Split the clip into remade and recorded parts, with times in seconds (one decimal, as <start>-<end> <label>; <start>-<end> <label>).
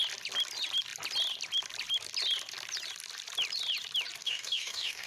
0.0-4.2 recorded; 4.2-5.1 remade